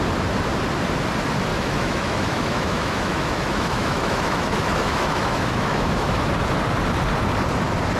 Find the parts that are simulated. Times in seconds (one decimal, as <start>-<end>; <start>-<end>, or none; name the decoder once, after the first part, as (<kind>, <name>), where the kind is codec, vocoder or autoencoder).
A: 1.5-6.3 (autoencoder, DAC-VAE)